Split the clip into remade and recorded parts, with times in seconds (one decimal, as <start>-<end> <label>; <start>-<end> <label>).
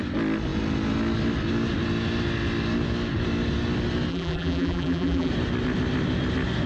0.0-4.1 recorded; 4.1-5.3 remade; 5.3-6.7 recorded